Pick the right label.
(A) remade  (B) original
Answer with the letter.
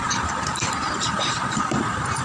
A